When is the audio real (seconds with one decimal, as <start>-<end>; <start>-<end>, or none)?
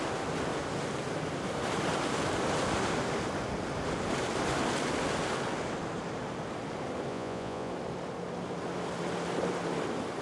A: 0.0-7.1; 7.7-10.2